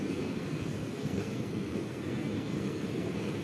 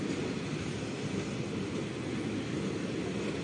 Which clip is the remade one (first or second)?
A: first